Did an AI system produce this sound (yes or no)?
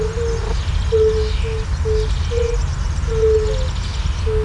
no